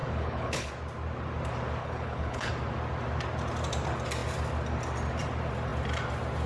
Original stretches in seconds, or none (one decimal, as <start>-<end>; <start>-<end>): 0.7-1.8; 2.5-6.5